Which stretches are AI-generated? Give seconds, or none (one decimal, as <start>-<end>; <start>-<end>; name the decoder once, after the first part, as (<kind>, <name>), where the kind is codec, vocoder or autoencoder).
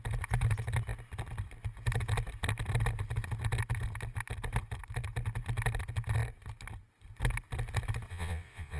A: 8.1-8.8 (vocoder, Vocos)